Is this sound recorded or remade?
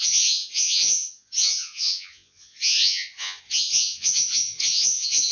remade